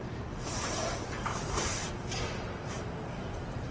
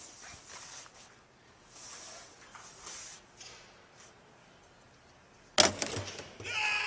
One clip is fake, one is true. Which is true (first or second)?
second